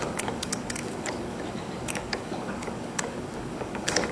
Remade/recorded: remade